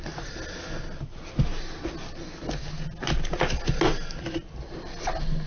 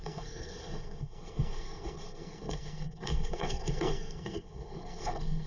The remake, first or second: second